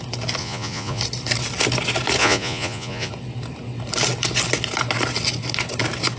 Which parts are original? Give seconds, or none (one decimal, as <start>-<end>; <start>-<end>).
0.0-0.4; 1.0-2.2; 3.1-6.2